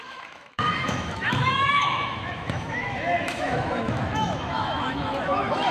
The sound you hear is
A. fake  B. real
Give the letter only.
A